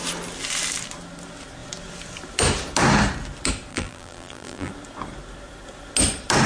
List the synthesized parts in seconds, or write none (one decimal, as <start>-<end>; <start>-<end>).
3.7-4.7